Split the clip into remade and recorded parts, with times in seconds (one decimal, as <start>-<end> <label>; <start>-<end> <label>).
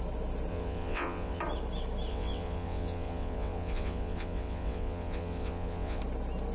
0.0-0.5 recorded; 0.5-1.4 remade; 1.4-2.1 recorded; 2.1-6.0 remade; 6.0-6.5 recorded